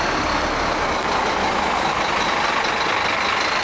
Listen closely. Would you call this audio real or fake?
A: real